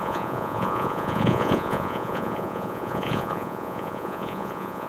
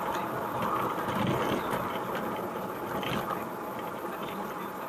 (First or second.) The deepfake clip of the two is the first